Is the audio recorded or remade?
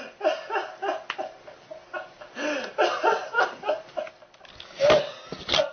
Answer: recorded